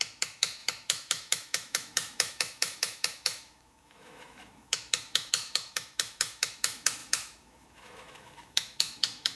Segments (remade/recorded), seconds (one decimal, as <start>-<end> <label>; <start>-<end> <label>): 0.0-9.4 remade